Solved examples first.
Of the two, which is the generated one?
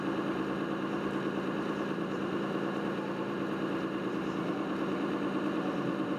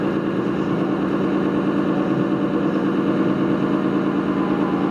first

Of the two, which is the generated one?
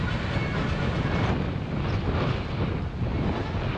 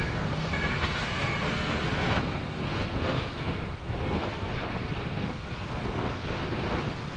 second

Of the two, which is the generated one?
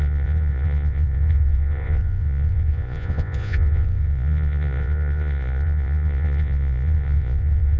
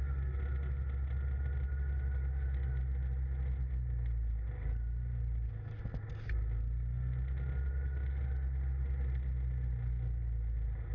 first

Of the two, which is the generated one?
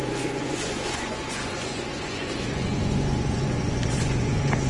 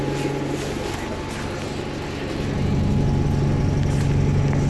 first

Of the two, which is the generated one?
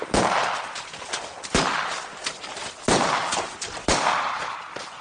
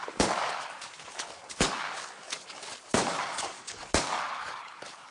second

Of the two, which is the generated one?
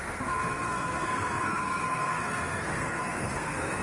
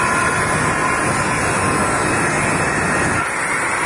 first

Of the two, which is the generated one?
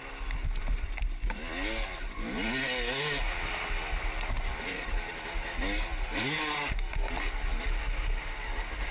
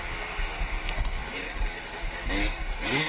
second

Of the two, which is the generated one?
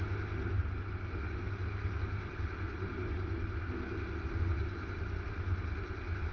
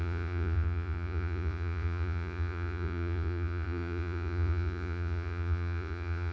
second